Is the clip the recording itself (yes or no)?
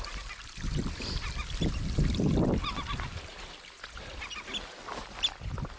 yes